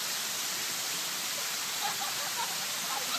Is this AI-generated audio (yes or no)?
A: yes